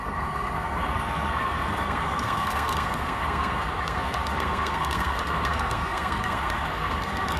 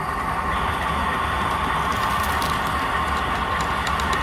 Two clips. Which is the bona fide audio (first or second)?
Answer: second